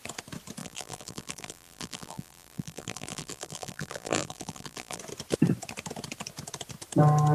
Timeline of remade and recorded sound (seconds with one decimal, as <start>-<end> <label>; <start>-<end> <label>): 0.0-0.6 recorded; 0.6-5.0 remade; 5.0-7.3 recorded